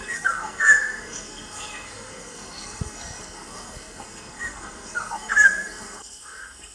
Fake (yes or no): yes